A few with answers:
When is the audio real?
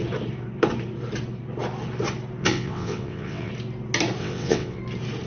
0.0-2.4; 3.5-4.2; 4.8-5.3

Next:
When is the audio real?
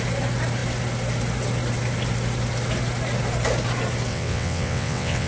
0.0-4.1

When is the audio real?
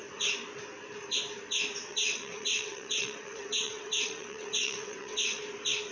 0.0-1.9; 5.4-5.9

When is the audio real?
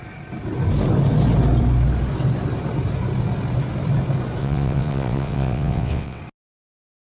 0.0-4.4; 6.2-7.2